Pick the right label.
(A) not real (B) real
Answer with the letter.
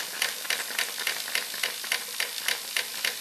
B